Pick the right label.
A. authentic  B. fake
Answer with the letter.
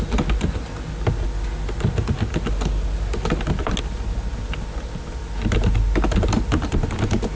A